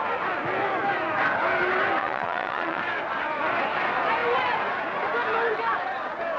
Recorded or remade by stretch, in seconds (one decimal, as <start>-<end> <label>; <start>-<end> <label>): 0.0-2.0 recorded; 2.0-2.8 remade; 2.8-6.4 recorded

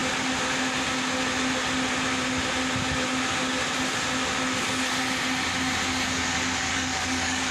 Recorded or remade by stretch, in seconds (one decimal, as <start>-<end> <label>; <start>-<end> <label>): 0.0-6.7 recorded; 6.7-7.5 remade

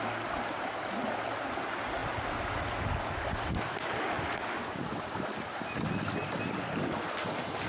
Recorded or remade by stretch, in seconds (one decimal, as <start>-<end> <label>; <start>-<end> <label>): 0.0-7.7 recorded